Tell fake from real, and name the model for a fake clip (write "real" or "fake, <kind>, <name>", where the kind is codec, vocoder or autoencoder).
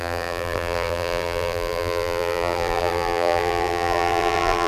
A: fake, vocoder, BigVGAN v2